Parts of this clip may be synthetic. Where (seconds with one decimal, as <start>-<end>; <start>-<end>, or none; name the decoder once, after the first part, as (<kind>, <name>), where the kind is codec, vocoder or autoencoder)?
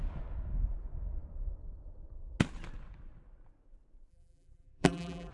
4.1-5.3 (vocoder, BigVGAN v2)